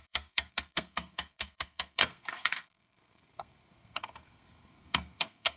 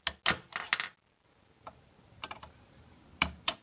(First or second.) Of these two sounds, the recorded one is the second